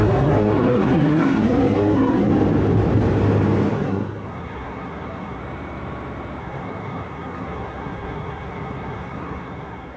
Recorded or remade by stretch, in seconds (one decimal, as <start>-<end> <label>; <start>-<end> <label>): 0.0-2.3 remade; 2.3-3.7 recorded; 3.7-5.4 remade; 5.4-6.4 recorded; 6.4-10.0 remade